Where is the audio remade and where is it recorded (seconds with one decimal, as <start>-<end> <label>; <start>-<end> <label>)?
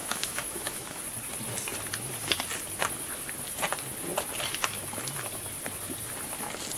0.0-1.0 remade; 1.0-6.8 recorded